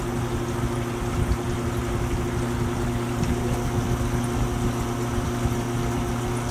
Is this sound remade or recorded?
recorded